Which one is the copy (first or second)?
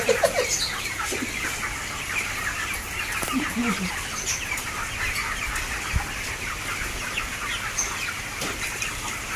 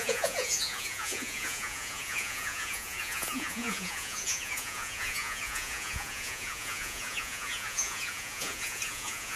second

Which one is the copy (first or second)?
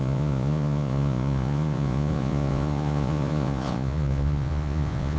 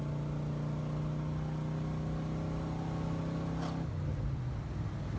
first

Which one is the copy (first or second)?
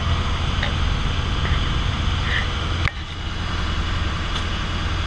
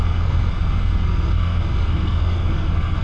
second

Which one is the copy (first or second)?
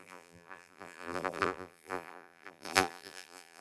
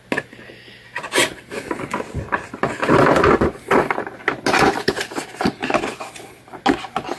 first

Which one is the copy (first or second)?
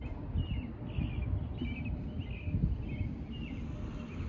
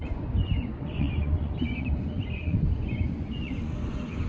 second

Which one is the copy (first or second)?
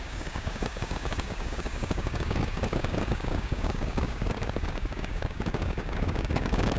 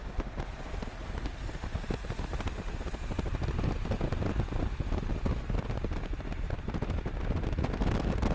first